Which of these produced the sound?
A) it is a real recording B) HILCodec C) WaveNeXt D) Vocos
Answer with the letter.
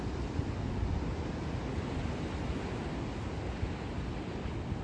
A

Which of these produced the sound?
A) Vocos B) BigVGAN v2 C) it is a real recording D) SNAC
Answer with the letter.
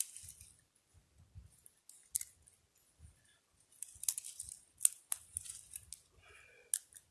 C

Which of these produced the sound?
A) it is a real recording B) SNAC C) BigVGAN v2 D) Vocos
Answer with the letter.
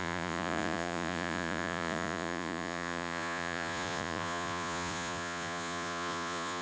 D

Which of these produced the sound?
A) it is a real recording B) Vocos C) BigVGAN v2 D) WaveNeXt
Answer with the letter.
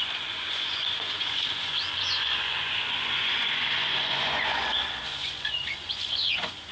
B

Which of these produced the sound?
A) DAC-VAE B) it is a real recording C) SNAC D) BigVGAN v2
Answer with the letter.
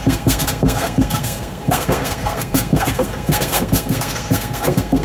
C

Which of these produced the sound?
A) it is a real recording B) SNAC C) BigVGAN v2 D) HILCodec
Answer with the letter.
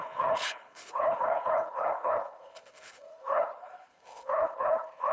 D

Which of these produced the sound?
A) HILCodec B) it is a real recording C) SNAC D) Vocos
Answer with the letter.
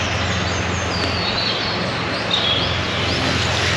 B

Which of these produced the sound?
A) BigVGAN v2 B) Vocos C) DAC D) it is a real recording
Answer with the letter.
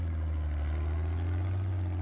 D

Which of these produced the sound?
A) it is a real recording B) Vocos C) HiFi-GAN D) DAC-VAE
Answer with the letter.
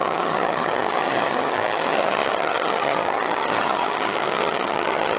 C